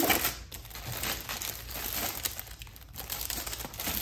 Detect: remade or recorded recorded